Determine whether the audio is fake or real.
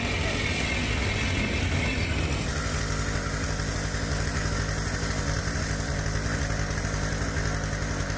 real